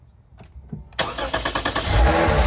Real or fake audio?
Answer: real